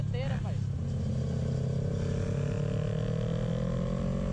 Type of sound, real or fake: real